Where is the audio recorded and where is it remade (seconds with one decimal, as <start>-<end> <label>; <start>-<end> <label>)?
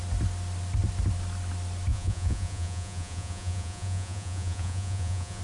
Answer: 0.0-1.9 recorded; 1.9-5.4 remade